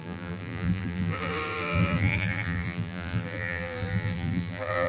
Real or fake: fake